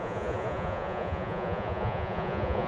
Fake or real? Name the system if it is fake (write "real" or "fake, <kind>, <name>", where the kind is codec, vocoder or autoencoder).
fake, vocoder, Vocos